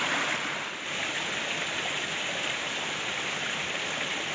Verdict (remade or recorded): recorded